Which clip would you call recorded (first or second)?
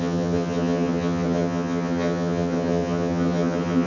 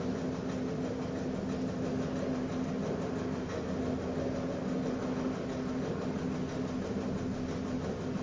second